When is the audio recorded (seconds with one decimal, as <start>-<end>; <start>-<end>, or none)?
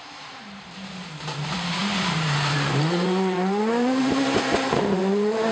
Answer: none